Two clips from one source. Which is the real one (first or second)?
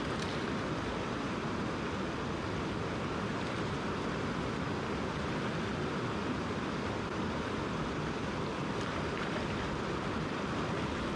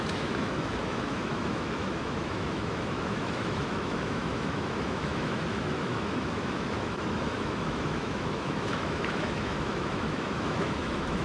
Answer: first